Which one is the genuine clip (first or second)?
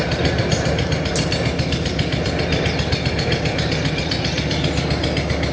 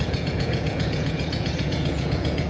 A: first